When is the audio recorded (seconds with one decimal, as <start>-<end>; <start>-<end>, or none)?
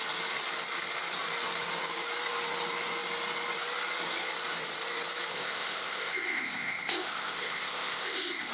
0.0-5.3